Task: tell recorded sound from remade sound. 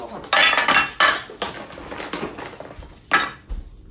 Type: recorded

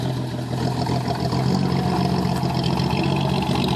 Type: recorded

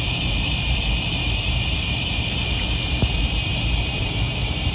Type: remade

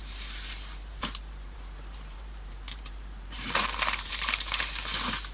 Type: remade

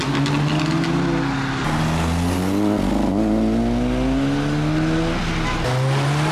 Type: recorded